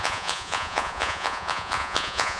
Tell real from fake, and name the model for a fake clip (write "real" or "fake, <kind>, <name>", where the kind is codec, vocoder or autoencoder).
fake, vocoder, Vocos